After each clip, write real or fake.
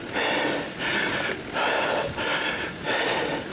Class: real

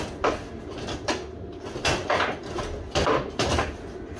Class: real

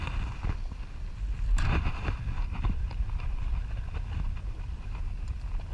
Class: real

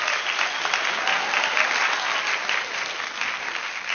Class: real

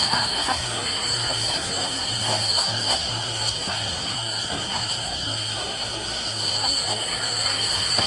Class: fake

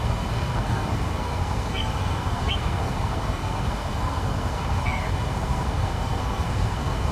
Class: fake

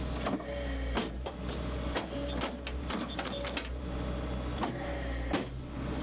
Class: real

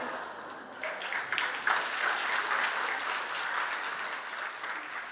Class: real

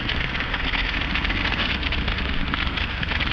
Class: fake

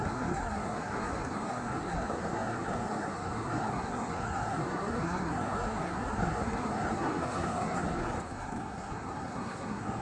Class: fake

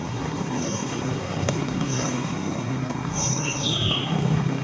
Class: fake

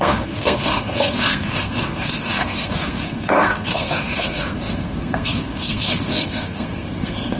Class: fake